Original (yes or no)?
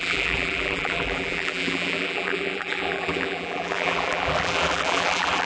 no